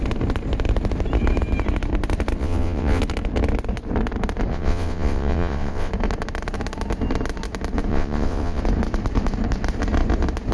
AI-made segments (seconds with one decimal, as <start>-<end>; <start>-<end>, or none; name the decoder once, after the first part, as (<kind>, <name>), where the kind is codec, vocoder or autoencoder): 2.4-3.0 (vocoder, WaveNeXt); 4.5-5.9; 7.9-8.6